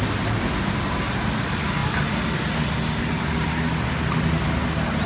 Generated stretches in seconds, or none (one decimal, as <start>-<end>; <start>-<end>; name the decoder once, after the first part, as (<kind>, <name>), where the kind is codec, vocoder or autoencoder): none